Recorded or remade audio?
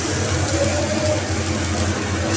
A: recorded